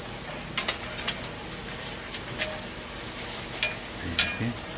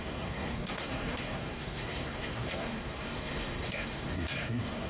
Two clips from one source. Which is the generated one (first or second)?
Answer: second